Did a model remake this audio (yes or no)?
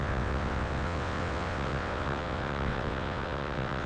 yes